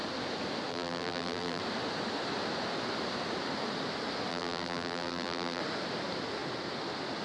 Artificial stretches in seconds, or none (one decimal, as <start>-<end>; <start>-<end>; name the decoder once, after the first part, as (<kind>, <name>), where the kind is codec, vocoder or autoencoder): 0.7-1.6 (vocoder, BigVGAN v2); 4.3-5.6